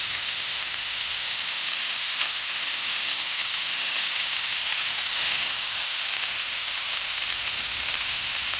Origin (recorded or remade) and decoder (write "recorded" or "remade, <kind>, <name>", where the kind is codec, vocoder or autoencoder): remade, autoencoder, DAC-VAE